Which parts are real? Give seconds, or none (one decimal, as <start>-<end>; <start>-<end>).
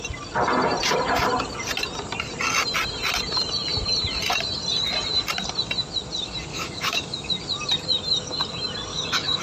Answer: 0.0-6.5; 7.3-8.9